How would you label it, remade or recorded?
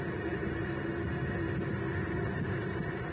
recorded